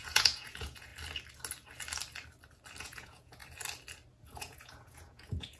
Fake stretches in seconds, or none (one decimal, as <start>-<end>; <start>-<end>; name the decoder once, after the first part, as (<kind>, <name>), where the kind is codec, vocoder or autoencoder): 0.0-0.9 (vocoder, Vocos); 2.8-3.4; 4.2-5.6